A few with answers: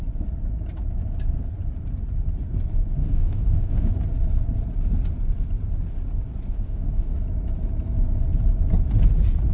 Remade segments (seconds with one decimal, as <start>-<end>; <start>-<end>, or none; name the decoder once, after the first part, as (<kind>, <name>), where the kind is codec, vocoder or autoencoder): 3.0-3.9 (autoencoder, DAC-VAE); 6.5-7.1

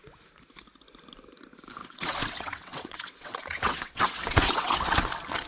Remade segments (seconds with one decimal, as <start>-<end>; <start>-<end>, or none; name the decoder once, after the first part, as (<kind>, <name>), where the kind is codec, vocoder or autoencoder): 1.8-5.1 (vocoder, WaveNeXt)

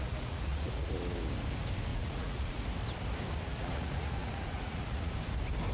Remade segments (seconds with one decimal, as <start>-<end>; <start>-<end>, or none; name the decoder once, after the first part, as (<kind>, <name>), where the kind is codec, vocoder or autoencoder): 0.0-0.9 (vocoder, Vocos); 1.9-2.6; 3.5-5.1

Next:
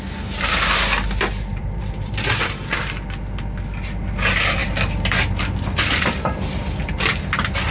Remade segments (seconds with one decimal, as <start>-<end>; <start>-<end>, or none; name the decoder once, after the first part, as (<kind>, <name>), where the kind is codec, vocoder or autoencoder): 1.5-2.5 (vocoder, BigVGAN v2)

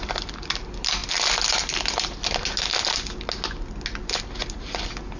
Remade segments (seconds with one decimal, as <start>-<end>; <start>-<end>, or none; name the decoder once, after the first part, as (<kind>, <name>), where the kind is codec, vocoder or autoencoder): none

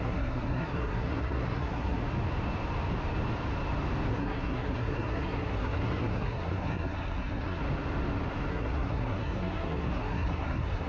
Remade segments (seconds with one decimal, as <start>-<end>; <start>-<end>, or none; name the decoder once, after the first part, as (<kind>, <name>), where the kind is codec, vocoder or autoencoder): 0.0-2.0 (codec, SNAC); 4.1-7.6; 8.5-10.9

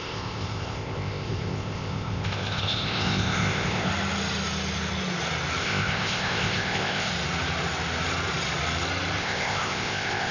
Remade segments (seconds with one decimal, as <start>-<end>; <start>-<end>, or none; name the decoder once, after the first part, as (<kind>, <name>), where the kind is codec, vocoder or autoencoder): 0.0-3.9 (codec, ZipCodec); 5.6-7.1; 9.2-10.3